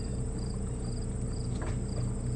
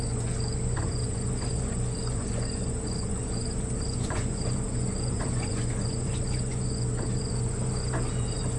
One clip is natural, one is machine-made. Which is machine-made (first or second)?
second